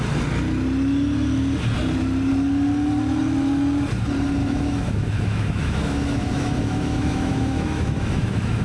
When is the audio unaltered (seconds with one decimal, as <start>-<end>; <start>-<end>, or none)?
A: 0.0-4.4